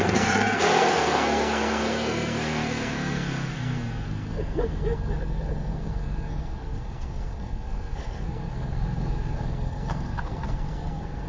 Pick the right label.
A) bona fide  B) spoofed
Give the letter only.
B